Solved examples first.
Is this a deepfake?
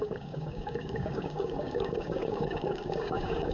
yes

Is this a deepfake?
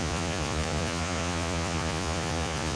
yes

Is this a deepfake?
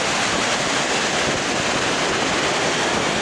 no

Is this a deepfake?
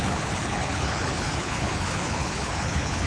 yes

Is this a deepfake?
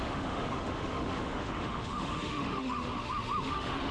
yes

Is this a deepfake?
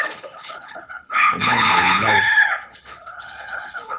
yes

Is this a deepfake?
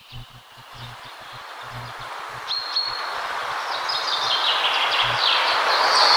no